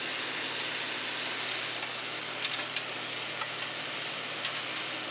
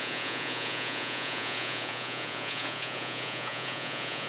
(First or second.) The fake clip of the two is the second